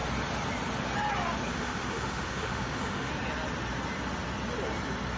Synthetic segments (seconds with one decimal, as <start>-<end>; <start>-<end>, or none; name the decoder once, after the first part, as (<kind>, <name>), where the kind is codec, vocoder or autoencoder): 1.5-3.1 (autoencoder, DAC-VAE)